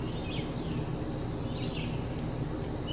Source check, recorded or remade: recorded